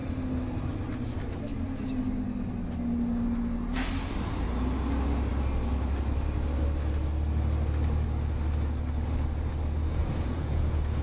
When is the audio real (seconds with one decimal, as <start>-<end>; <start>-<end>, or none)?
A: 0.0-10.0